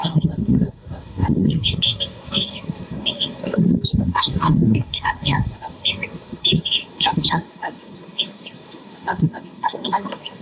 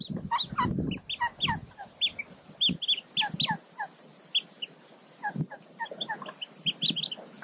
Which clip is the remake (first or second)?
first